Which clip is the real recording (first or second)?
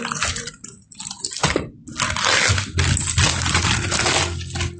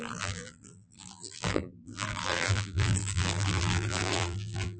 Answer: first